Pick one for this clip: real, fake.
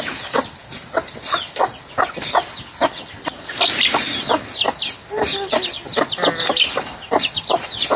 fake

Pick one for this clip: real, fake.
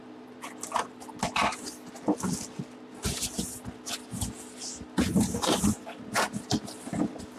real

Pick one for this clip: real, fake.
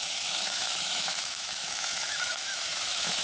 fake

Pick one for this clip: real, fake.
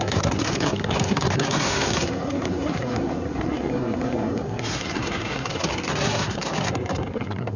fake